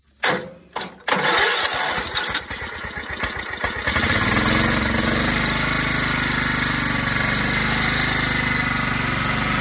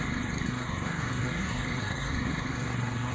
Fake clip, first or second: second